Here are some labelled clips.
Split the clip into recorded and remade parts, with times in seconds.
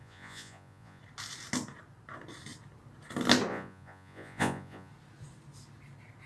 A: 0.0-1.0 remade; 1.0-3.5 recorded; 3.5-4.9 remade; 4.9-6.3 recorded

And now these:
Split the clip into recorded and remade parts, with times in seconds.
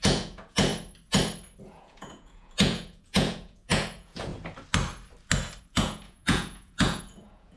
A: 0.0-0.7 remade; 0.7-1.6 recorded; 1.6-4.3 remade; 4.3-5.6 recorded; 5.6-7.6 remade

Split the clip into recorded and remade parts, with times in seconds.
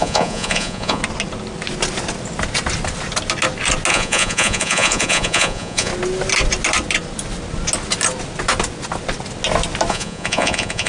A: 0.0-1.0 remade; 1.0-3.9 recorded; 3.9-5.9 remade; 5.9-9.9 recorded; 9.9-10.9 remade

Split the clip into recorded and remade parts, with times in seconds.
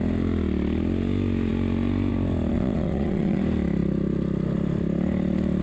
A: 0.0-2.5 recorded; 2.5-3.4 remade; 3.4-5.6 recorded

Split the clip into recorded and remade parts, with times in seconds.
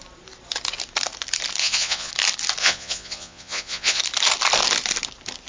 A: 0.0-1.6 recorded; 1.6-2.1 remade; 2.1-2.6 recorded; 2.6-4.0 remade; 4.0-5.5 recorded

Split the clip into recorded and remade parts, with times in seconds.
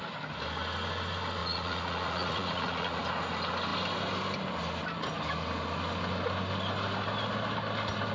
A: 0.0-1.4 recorded; 1.4-3.0 remade; 3.0-8.1 recorded